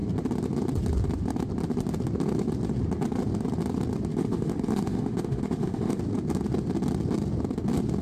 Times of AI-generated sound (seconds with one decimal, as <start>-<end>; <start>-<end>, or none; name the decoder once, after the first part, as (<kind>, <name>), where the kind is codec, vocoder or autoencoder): 4.1-6.0 (autoencoder, DAC-VAE)